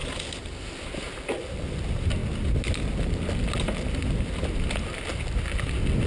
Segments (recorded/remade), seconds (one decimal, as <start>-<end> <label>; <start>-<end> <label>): 0.0-6.1 recorded